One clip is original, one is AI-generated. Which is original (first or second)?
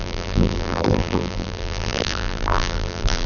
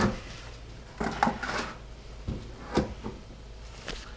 second